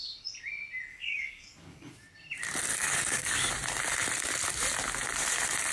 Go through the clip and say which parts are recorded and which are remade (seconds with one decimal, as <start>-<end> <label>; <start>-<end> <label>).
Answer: 0.0-0.9 recorded; 0.9-1.9 remade; 1.9-2.7 recorded; 2.7-3.5 remade; 3.5-5.7 recorded